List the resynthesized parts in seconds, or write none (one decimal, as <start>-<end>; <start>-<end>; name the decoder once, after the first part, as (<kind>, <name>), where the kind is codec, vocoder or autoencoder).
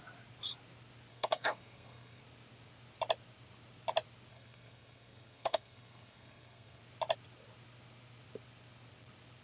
1.1-2.2 (codec, SNAC); 4.3-6.8